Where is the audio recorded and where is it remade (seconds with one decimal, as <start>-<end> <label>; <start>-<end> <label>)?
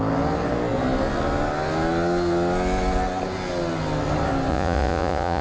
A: 0.0-4.5 recorded; 4.5-5.4 remade